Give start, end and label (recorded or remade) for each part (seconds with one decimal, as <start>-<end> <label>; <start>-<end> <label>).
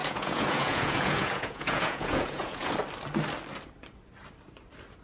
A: 0.0-2.7 remade; 2.7-5.0 recorded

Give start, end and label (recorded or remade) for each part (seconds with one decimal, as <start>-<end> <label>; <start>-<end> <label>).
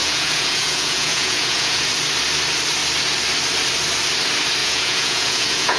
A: 0.0-1.9 remade; 1.9-4.6 recorded; 4.6-5.8 remade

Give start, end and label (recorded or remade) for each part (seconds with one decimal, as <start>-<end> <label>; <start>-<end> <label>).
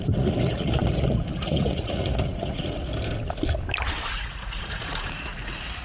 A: 0.0-2.9 remade; 2.9-4.1 recorded; 4.1-5.8 remade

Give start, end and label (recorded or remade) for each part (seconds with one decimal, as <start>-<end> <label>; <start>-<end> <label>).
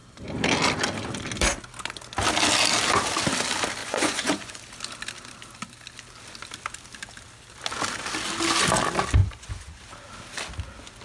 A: 0.0-3.8 recorded; 3.8-4.6 remade; 4.6-9.2 recorded; 9.2-9.8 remade; 9.8-11.0 recorded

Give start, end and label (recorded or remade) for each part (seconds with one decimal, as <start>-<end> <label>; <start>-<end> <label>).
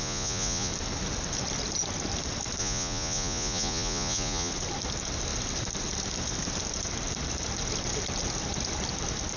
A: 0.0-0.7 remade; 0.7-2.6 recorded; 2.6-4.5 remade; 4.5-9.4 recorded